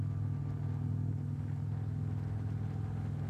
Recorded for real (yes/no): yes